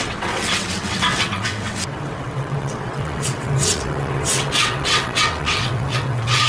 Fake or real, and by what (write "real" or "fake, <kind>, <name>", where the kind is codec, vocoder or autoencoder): fake, vocoder, WaveNeXt